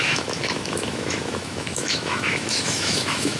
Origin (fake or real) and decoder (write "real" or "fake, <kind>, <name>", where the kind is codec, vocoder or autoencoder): fake, autoencoder, DAC-VAE